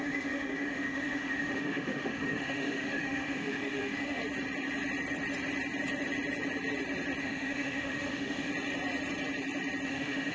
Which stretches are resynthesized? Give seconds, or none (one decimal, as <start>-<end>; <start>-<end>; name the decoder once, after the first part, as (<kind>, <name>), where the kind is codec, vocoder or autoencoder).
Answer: 0.0-4.2 (autoencoder, DAC-VAE); 7.2-8.5; 9.9-10.3